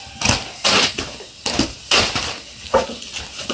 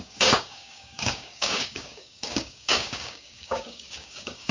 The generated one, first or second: second